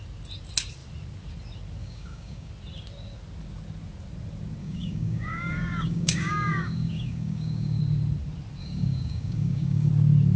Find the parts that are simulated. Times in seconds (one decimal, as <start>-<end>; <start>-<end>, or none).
1.8-2.5; 4.6-7.8; 8.6-9.9